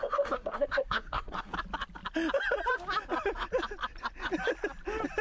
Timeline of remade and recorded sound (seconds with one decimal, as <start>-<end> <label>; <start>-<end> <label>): 0.0-1.5 remade; 1.5-5.2 recorded